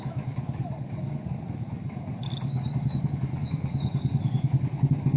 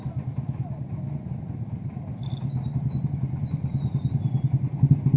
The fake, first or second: first